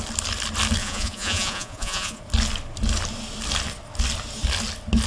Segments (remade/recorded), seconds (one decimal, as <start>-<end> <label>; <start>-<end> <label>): 0.0-0.8 recorded; 0.8-2.2 remade; 2.2-5.1 recorded